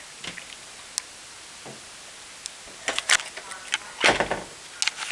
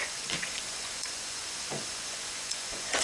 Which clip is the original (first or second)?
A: first